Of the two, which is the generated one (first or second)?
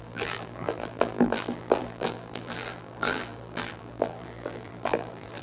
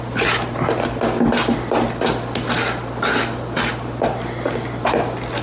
first